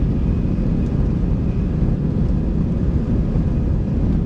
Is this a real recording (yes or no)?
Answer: yes